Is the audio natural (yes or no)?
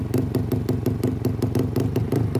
yes